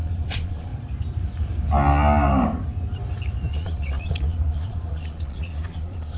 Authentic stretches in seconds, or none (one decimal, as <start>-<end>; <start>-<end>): 0.7-3.5